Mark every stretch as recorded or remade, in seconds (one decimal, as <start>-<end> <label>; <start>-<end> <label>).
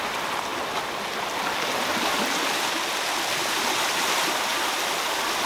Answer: 0.0-0.5 remade; 0.5-2.4 recorded; 2.4-5.5 remade